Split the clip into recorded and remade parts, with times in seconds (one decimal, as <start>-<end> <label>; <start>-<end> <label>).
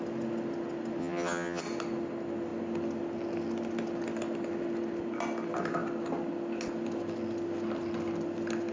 0.0-1.0 recorded; 1.0-1.6 remade; 1.6-8.7 recorded